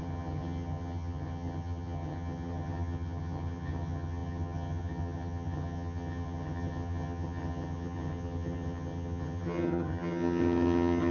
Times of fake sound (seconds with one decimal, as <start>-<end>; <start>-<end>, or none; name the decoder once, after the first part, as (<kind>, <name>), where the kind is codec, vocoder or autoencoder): 0.0-11.1 (vocoder, HiFi-GAN)